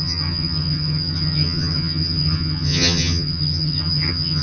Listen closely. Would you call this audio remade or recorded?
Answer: remade